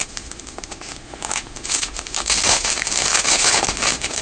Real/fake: fake